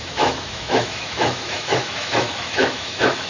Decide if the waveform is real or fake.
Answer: fake